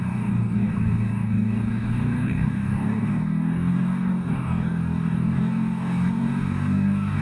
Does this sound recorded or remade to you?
remade